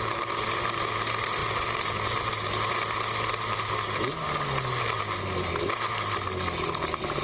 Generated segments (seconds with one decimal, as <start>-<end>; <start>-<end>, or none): none